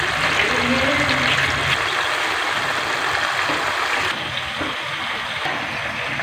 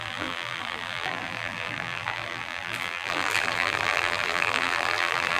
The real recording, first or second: first